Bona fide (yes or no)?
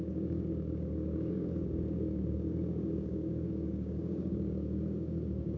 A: no